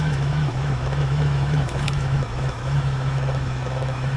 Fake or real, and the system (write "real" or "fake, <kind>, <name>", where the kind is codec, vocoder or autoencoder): fake, autoencoder, DAC-VAE